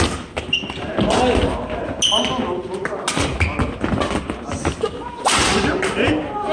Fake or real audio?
real